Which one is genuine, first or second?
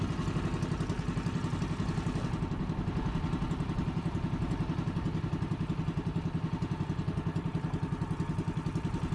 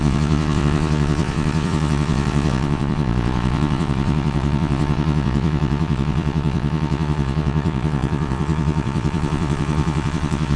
first